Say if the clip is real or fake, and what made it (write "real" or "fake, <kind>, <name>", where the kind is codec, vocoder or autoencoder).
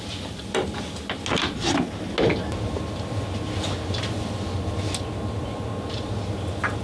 real